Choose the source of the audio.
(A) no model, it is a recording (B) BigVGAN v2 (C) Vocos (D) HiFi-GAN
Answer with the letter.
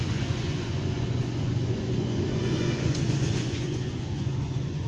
C